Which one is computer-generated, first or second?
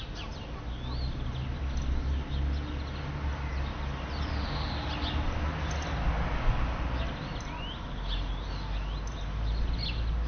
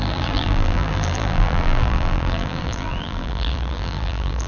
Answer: second